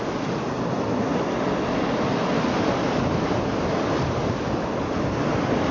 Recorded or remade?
recorded